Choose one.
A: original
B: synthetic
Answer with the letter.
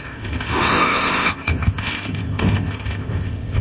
B